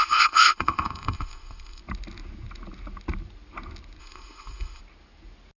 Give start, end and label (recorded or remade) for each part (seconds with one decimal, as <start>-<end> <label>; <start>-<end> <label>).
0.0-1.8 remade; 1.8-4.0 recorded; 4.0-4.8 remade; 4.8-5.6 recorded